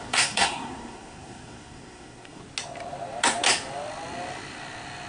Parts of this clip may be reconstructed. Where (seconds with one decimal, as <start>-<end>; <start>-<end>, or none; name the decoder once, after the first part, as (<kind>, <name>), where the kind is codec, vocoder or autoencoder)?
0.0-2.4 (codec, SNAC)